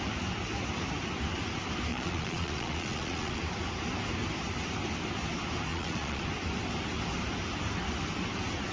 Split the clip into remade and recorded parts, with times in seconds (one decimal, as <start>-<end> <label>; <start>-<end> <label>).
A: 0.0-1.9 recorded; 1.9-3.4 remade; 3.4-5.7 recorded; 5.7-6.2 remade; 6.2-8.7 recorded